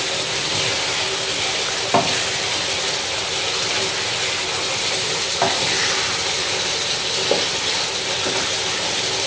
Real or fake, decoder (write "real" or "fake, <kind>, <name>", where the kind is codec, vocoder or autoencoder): real